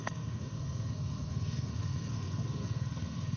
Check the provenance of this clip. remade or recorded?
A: remade